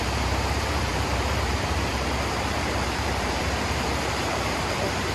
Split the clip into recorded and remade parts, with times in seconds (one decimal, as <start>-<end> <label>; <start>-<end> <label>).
0.0-5.1 remade